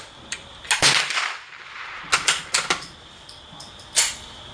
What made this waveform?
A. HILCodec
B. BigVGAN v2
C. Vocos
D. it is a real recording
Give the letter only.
D